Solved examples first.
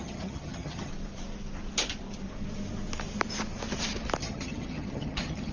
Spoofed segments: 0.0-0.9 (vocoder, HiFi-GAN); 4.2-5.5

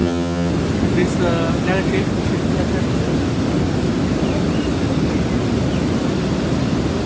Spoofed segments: 0.0-0.5 (vocoder, HiFi-GAN)

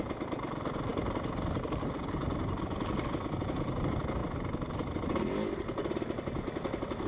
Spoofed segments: none

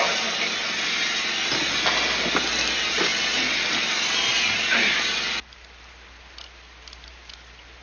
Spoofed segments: none

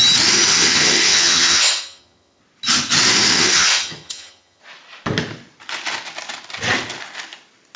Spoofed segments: 0.5-2.4 (vocoder, HiFi-GAN); 3.3-4.6

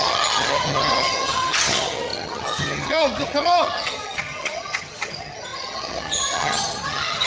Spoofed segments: 0.0-7.3 (vocoder, HiFi-GAN)

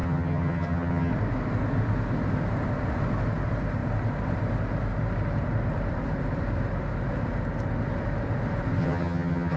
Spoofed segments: 0.0-1.1 (vocoder, HiFi-GAN); 8.8-9.6